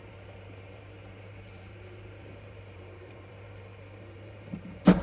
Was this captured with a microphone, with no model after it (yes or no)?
no